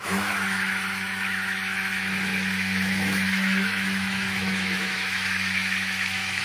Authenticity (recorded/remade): remade